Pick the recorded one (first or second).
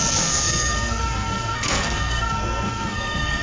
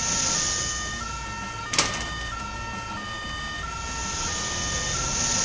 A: second